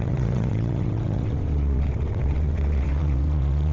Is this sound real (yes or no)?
no